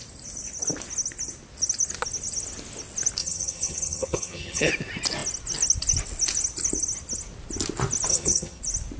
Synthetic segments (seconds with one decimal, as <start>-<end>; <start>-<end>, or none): 3.2-4.7; 8.1-8.6

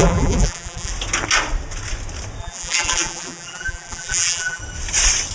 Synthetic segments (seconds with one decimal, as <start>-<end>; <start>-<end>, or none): 0.0-0.9; 2.4-4.6

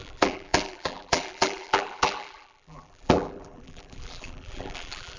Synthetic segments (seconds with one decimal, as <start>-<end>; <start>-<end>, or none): 0.0-5.2

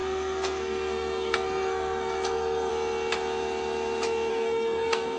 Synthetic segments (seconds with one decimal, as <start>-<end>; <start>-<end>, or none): 0.0-2.7; 4.3-5.2

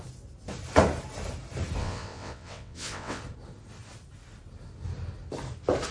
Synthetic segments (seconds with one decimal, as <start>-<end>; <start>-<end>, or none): 1.8-3.2

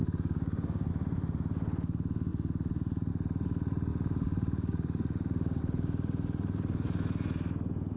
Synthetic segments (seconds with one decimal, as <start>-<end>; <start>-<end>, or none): 0.0-0.9; 3.9-5.6